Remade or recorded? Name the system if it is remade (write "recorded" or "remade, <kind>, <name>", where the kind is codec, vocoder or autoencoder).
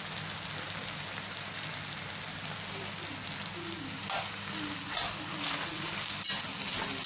recorded